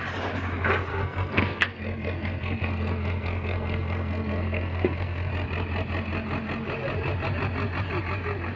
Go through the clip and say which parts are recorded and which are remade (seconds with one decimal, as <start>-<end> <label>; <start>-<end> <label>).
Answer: 0.0-0.9 recorded; 0.9-5.3 remade; 5.3-8.6 recorded